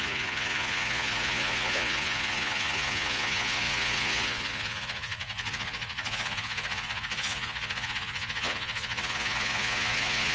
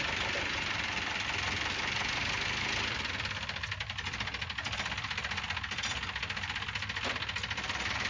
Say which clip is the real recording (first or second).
second